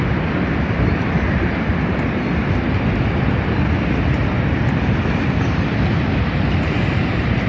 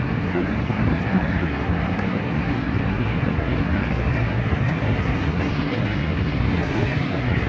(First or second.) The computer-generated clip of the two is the second